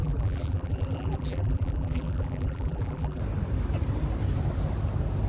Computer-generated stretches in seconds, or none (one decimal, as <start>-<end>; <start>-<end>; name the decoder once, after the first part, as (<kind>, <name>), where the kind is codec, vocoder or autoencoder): 0.0-3.2 (vocoder, BigVGAN v2)

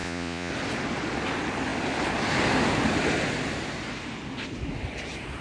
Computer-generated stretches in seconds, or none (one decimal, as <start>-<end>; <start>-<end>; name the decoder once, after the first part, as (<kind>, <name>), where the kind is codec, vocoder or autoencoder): 0.0-0.5 (vocoder, Vocos)

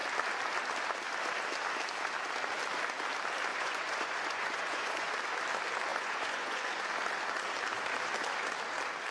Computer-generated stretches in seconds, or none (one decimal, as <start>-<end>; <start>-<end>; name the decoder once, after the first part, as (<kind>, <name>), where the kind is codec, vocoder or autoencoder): 3.5-5.1 (vocoder, Vocos); 5.9-6.8

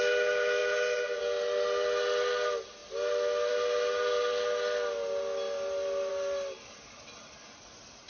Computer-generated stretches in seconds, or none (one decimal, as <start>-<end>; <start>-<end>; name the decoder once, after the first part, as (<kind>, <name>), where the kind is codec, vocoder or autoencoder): none

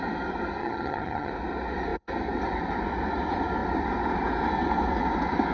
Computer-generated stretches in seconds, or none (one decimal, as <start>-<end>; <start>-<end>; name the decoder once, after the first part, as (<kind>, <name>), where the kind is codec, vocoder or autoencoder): 0.6-1.3 (vocoder, HiFi-GAN)

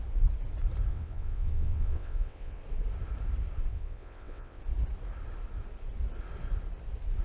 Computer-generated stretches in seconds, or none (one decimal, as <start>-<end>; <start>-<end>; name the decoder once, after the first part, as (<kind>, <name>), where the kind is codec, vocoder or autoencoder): 0.9-2.6 (vocoder, WaveNeXt); 3.7-4.6